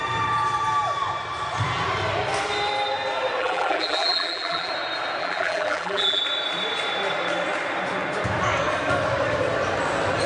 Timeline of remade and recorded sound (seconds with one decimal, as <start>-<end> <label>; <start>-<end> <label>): 0.0-3.4 recorded; 3.4-4.7 remade; 4.7-5.2 recorded; 5.2-6.2 remade; 6.2-10.3 recorded